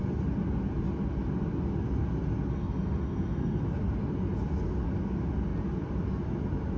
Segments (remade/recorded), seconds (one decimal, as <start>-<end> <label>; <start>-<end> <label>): 0.0-2.5 recorded; 2.5-3.6 remade; 3.6-6.8 recorded